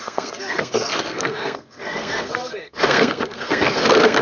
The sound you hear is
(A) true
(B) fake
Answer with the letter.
B